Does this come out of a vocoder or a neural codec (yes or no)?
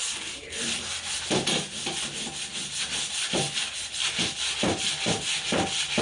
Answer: no